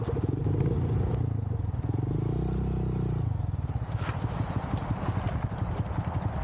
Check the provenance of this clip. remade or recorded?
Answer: recorded